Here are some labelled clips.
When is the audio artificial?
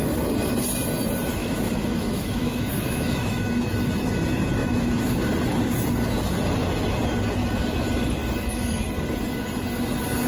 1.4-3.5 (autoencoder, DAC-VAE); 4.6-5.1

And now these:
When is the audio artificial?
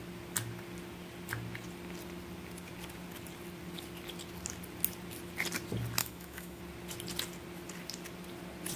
6.0-6.6 (autoencoder, DAC-VAE)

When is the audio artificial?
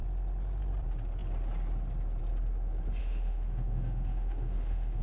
3.0-5.0 (autoencoder, DAC-VAE)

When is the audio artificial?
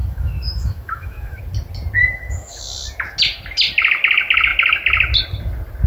0.0-1.4 (autoencoder, DAC-VAE); 2.0-2.6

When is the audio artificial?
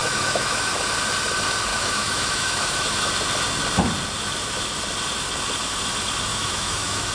0.0-0.7 (autoencoder, DAC-VAE); 1.7-3.1; 6.3-7.1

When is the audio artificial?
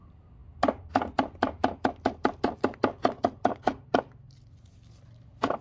none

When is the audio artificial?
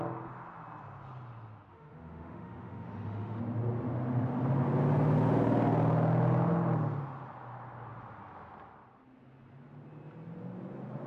1.7-3.4 (autoencoder, DAC-VAE)